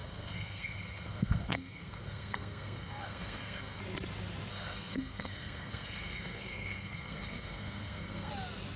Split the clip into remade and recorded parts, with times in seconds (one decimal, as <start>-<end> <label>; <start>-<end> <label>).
0.0-3.8 remade; 3.8-4.5 recorded; 4.5-8.3 remade; 8.3-8.8 recorded